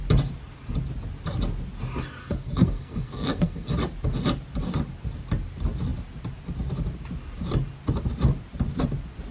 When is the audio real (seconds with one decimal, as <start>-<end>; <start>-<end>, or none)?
0.0-2.2; 3.7-9.3